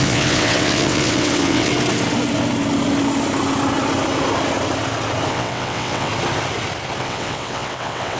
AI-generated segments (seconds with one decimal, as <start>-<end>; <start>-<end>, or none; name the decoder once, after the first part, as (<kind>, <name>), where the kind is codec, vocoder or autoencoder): 0.0-1.7 (vocoder, WaveNeXt); 5.3-6.1; 7.0-8.2